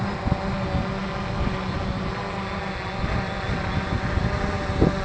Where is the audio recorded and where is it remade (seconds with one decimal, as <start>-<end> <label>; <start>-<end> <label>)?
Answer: 0.0-5.0 recorded